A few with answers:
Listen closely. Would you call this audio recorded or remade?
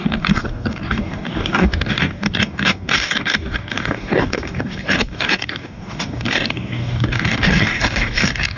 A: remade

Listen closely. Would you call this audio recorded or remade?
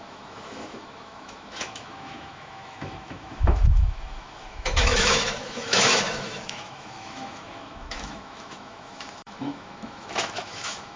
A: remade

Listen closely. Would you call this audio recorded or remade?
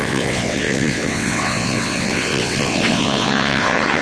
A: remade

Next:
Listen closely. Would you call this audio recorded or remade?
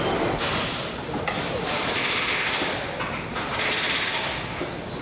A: recorded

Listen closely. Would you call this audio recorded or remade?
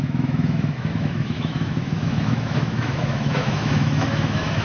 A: remade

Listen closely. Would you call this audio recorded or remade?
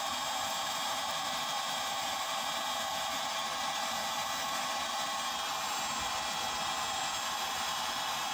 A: recorded